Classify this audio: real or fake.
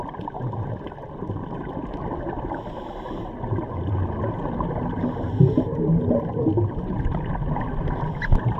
real